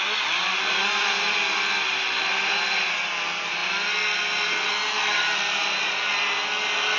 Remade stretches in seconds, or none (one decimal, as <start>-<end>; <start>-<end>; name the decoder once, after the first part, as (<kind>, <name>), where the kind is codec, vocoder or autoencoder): none